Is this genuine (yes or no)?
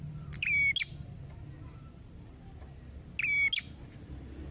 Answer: yes